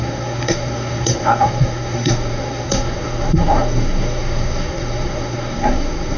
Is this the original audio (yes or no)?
no